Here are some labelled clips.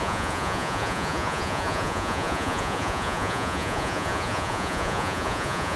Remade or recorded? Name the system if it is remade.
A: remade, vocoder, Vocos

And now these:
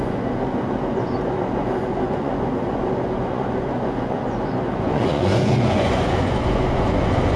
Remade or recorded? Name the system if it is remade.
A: remade, vocoder, Vocos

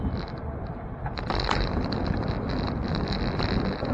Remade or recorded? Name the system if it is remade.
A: recorded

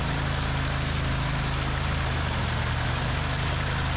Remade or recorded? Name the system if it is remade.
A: recorded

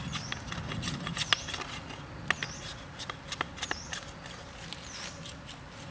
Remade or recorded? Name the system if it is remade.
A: recorded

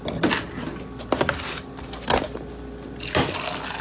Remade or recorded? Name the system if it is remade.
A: recorded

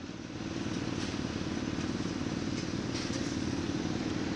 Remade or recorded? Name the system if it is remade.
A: recorded